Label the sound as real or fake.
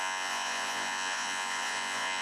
fake